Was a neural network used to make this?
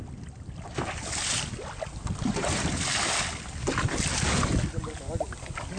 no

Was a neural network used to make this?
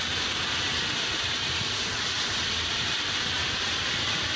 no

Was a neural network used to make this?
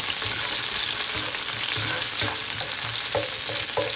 no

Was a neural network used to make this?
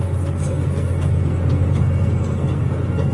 yes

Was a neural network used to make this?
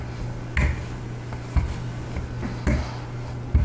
no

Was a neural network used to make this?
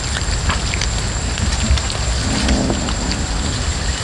no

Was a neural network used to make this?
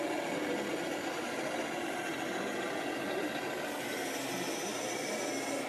no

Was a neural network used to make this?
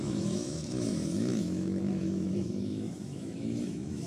yes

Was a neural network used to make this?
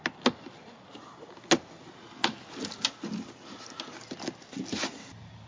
no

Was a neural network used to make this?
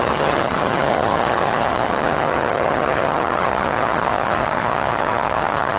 yes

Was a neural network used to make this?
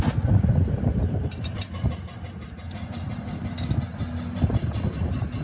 no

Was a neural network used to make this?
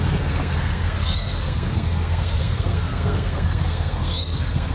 yes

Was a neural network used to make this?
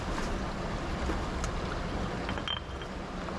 no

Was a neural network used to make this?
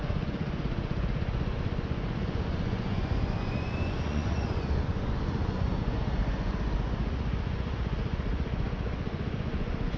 yes